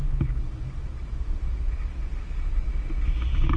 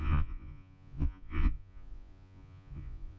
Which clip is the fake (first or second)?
second